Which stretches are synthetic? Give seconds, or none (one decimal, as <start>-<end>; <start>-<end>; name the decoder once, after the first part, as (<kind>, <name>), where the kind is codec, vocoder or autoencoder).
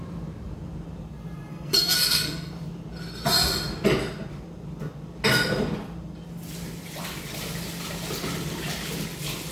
1.5-2.5 (codec, SNAC)